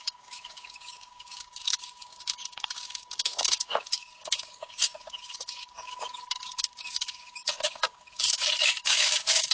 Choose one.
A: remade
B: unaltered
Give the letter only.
A